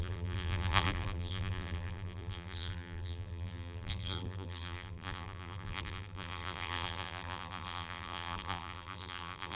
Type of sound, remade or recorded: remade